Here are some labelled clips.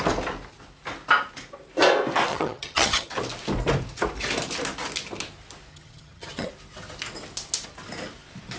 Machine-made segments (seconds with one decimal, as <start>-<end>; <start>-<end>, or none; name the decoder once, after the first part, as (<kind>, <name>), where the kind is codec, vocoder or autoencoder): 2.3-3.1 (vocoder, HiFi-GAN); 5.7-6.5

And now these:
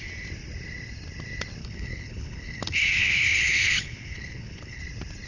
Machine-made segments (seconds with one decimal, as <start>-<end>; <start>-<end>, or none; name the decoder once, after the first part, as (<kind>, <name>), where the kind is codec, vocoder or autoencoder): 1.6-4.8 (codec, HILCodec)

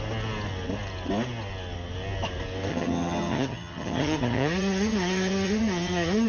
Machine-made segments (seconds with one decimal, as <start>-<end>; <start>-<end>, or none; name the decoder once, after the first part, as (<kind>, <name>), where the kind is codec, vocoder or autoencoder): 2.7-6.3 (vocoder, HiFi-GAN)

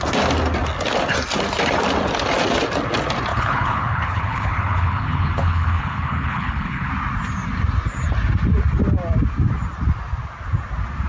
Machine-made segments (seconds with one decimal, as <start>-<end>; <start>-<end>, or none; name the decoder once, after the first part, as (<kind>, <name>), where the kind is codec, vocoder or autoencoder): 3.3-6.9 (codec, HILCodec)

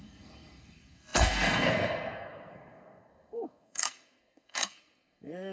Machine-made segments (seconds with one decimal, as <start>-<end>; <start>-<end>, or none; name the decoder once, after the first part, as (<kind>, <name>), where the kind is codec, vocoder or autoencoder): 0.0-5.5 (codec, SNAC)